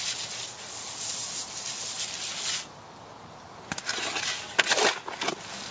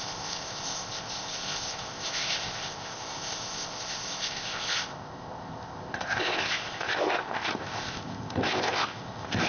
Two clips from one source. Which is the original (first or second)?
first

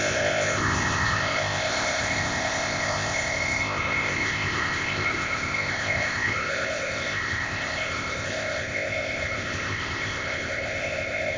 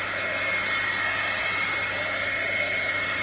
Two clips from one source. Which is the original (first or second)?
second